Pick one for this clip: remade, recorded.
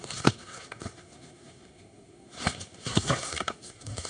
remade